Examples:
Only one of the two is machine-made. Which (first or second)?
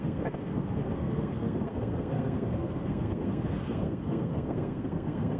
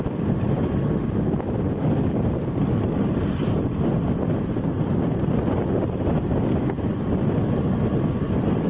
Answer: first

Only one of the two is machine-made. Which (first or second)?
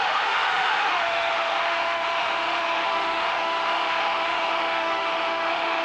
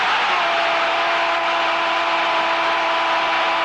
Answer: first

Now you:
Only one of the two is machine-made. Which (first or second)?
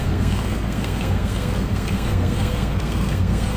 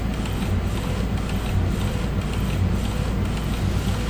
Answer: first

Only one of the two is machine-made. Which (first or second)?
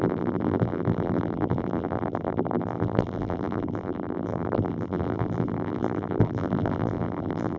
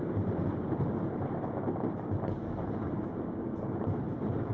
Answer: first